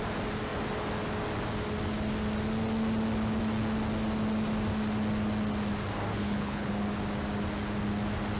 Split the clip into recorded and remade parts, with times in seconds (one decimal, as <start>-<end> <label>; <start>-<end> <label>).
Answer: 0.0-6.1 recorded; 6.1-6.7 remade; 6.7-8.4 recorded